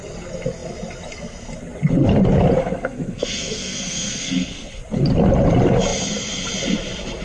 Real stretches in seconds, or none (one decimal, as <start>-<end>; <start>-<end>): 0.0-2.6; 4.7-7.2